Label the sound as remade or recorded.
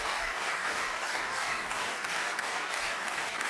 remade